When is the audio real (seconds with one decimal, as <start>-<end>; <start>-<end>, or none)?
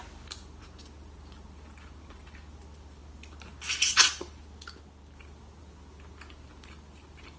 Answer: 0.0-7.4